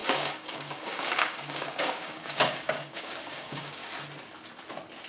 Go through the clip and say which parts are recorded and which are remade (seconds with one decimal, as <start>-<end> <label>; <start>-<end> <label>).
0.0-3.8 remade; 3.8-5.1 recorded